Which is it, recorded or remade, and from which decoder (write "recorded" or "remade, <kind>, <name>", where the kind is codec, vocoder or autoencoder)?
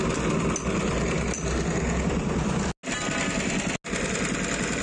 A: recorded